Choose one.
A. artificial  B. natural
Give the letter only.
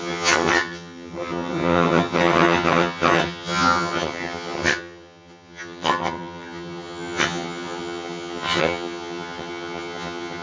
A